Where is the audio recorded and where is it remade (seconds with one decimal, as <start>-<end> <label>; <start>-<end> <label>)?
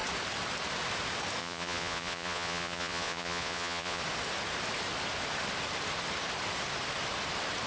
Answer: 0.0-1.4 recorded; 1.4-4.0 remade; 4.0-7.7 recorded